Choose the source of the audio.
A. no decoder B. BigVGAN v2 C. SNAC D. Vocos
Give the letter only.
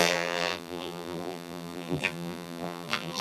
B